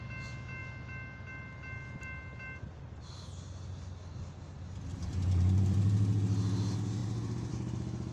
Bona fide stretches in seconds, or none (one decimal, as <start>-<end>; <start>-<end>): 0.0-4.9; 6.2-7.0; 7.5-8.1